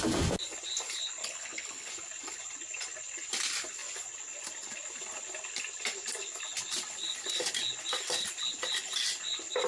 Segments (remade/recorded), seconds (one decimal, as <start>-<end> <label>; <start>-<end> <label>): 0.0-1.2 recorded; 1.2-1.9 remade; 1.9-9.7 recorded